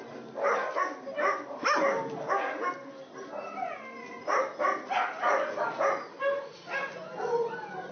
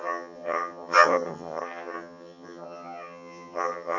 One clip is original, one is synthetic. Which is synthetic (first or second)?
second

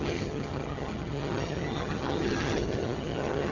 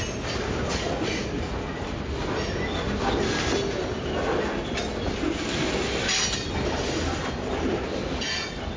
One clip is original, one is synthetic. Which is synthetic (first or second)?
first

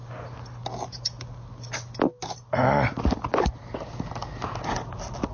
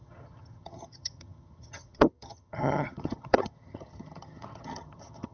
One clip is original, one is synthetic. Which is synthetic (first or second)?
second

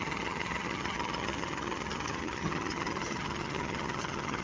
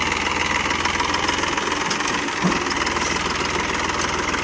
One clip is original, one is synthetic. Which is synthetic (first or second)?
first